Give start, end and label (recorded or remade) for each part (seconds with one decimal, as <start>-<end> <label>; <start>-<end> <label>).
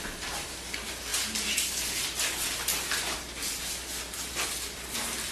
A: 0.0-5.3 recorded